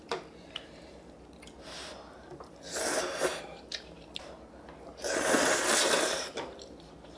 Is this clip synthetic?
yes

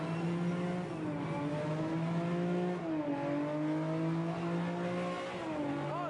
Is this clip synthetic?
no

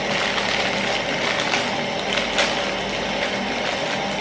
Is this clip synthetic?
no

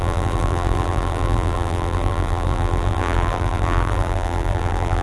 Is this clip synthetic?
yes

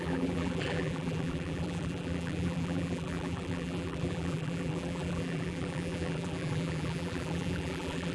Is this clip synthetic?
yes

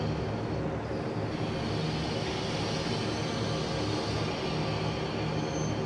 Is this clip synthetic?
no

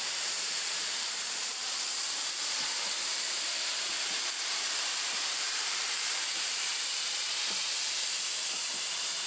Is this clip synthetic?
yes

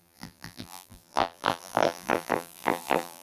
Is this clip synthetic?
yes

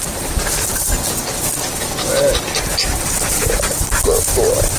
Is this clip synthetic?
no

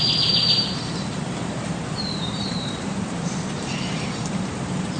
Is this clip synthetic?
yes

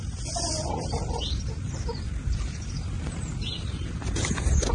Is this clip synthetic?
no